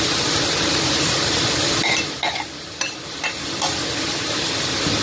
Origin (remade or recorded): recorded